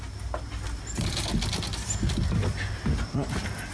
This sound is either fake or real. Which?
real